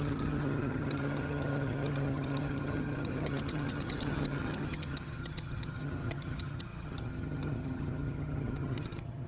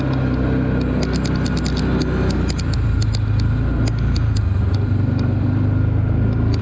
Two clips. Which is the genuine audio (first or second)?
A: second